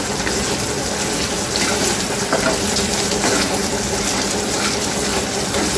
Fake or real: real